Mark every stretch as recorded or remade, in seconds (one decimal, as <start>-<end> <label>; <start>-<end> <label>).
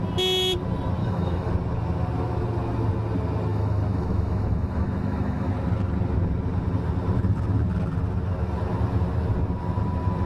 0.0-1.0 recorded; 1.0-1.5 remade; 1.5-3.5 recorded; 3.5-5.5 remade; 5.5-10.3 recorded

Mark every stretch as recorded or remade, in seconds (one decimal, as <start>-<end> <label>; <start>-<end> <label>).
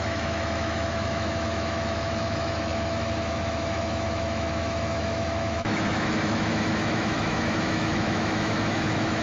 0.0-9.2 remade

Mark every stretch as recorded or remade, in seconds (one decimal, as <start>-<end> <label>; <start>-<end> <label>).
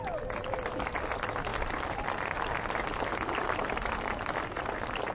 0.0-5.1 recorded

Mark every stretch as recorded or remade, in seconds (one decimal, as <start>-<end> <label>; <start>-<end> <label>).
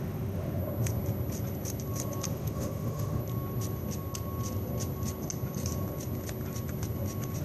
0.0-0.6 remade; 0.6-2.3 recorded; 2.3-3.2 remade; 3.2-7.4 recorded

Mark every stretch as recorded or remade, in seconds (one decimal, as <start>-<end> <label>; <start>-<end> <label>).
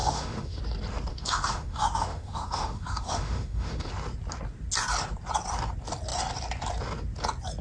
0.0-0.6 remade; 0.6-1.1 recorded; 1.1-3.9 remade; 3.9-7.6 recorded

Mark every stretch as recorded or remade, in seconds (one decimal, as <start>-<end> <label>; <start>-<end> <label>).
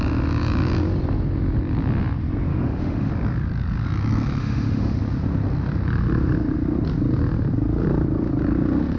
0.0-2.5 recorded; 2.5-3.1 remade; 3.1-4.4 recorded; 4.4-5.0 remade; 5.0-9.0 recorded